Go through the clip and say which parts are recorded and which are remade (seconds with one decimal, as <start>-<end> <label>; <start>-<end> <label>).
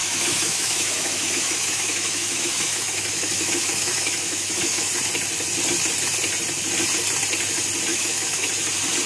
0.0-4.9 remade; 4.9-7.9 recorded; 7.9-8.5 remade; 8.5-9.1 recorded